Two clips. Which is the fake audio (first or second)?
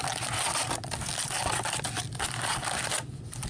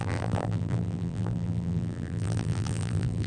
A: second